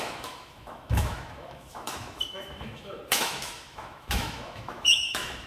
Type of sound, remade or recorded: remade